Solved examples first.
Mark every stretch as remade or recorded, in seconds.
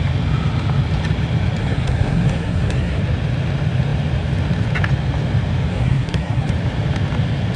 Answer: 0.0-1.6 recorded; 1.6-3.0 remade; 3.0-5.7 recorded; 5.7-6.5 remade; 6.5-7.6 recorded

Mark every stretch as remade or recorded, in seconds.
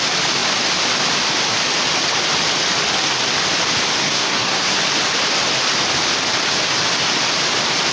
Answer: 0.0-4.0 recorded; 4.0-4.8 remade; 4.8-7.9 recorded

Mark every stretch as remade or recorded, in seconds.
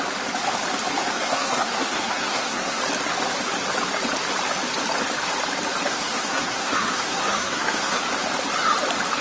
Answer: 0.0-1.1 recorded; 1.1-2.8 remade; 2.8-5.9 recorded; 5.9-8.0 remade; 8.0-9.2 recorded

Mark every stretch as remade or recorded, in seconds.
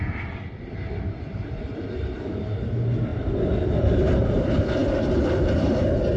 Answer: 0.0-6.2 recorded